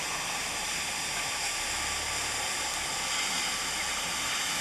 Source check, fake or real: real